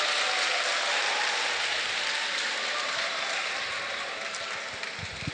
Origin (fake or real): real